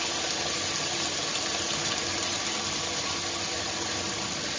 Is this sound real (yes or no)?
yes